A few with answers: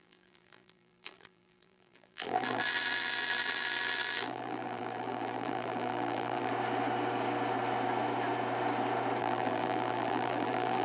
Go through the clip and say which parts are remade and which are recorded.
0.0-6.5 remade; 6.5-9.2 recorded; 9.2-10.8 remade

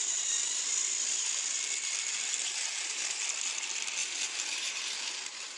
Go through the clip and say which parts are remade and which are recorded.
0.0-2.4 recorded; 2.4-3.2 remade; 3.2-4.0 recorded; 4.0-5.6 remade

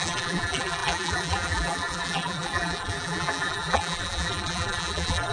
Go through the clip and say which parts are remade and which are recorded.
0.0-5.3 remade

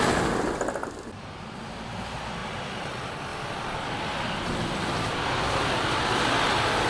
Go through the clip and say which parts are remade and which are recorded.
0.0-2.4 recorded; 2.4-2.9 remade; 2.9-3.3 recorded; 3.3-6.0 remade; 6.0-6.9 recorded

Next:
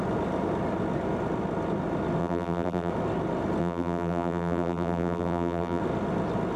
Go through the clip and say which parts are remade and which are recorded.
0.0-2.2 recorded; 2.2-2.9 remade; 2.9-3.6 recorded; 3.6-5.8 remade; 5.8-6.6 recorded

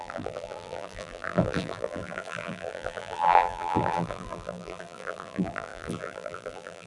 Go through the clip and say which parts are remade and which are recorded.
0.0-6.9 remade

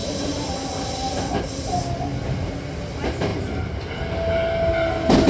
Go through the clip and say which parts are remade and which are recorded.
0.0-0.5 remade; 0.5-3.3 recorded; 3.3-3.9 remade; 3.9-5.3 recorded

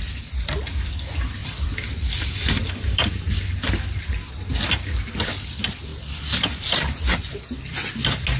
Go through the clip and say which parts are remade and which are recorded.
0.0-1.4 recorded; 1.4-3.3 remade; 3.3-8.4 recorded